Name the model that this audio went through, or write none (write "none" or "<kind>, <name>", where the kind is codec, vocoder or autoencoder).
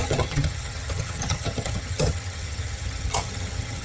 vocoder, HiFi-GAN